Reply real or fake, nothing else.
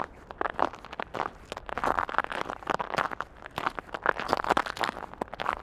real